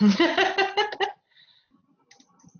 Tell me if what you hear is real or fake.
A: real